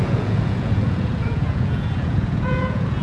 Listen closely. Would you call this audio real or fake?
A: fake